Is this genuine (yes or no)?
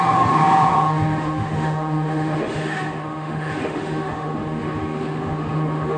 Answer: no